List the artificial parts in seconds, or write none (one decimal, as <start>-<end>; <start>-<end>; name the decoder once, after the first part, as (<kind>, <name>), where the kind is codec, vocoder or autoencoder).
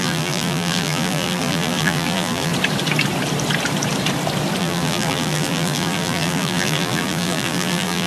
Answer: 0.0-2.5 (vocoder, BigVGAN v2); 4.6-8.1